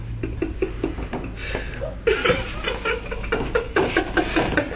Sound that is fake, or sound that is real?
real